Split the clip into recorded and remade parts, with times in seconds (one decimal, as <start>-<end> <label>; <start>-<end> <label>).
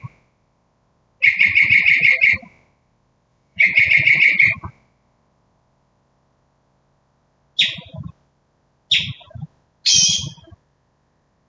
0.0-3.3 recorded; 3.3-3.9 remade; 3.9-11.5 recorded